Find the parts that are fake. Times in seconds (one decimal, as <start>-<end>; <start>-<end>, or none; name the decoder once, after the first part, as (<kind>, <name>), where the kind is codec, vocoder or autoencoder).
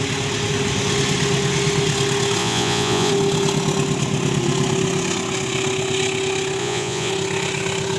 2.4-3.1 (vocoder, Vocos); 6.6-7.1